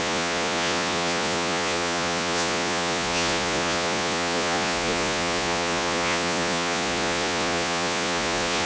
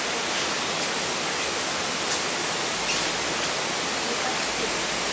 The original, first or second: second